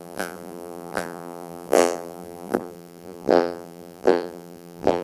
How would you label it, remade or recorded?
remade